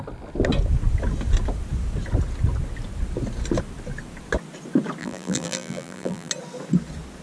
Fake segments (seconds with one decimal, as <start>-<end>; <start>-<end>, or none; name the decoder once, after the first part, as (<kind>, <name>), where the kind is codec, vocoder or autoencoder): 5.0-6.3 (vocoder, BigVGAN v2)